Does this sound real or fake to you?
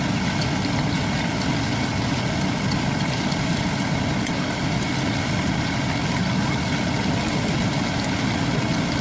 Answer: real